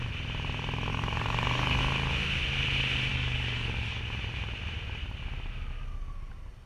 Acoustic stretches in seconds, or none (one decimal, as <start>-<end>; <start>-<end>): 0.0-0.9; 1.8-3.1; 4.0-6.7